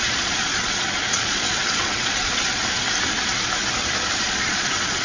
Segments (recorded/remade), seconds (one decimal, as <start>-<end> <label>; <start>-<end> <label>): 0.0-2.6 remade; 2.6-4.2 recorded; 4.2-5.0 remade